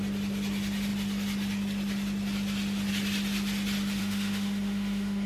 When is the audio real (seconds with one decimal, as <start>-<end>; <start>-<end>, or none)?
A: 0.0-4.0